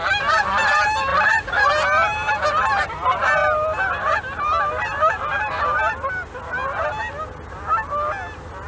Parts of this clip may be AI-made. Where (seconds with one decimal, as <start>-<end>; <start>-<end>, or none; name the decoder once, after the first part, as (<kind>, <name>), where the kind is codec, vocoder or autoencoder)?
1.1-1.7 (vocoder, Vocos)